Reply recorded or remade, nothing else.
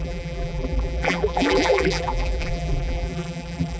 remade